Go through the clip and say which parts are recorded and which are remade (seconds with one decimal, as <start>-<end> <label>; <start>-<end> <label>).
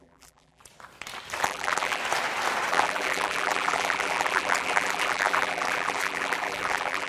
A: 0.0-0.6 remade; 0.6-1.4 recorded; 1.4-2.0 remade; 2.0-2.7 recorded; 2.7-7.1 remade